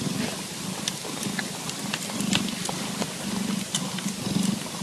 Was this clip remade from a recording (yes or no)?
no